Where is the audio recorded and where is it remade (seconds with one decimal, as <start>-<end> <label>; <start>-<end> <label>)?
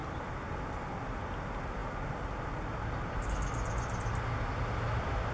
0.0-5.3 recorded